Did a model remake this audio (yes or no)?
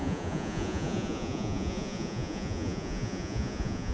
yes